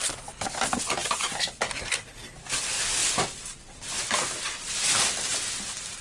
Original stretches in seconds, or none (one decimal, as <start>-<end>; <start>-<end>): 0.0-1.0; 1.9-3.0; 4.4-6.0